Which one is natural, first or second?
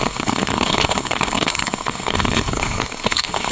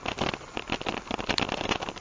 second